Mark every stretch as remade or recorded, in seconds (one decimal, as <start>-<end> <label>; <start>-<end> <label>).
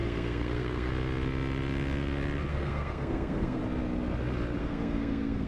0.0-0.9 remade; 0.9-2.5 recorded; 2.5-3.6 remade; 3.6-4.6 recorded; 4.6-5.5 remade